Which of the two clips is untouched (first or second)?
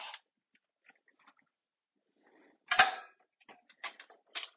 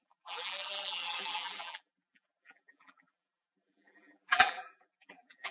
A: first